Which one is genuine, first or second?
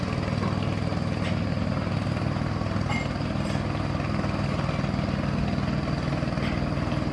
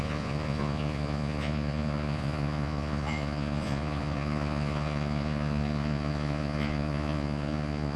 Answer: first